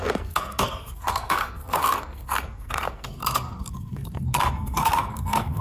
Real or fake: fake